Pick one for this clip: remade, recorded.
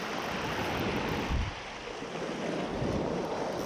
recorded